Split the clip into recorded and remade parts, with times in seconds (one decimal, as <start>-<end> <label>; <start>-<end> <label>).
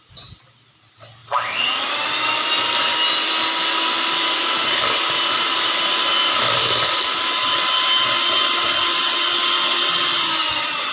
0.0-10.9 recorded